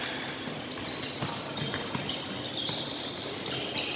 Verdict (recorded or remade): remade